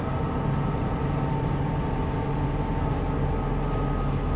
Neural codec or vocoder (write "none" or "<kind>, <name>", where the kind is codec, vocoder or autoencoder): none